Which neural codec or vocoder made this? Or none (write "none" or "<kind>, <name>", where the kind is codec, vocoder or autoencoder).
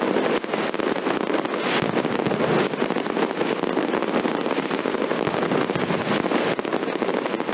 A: none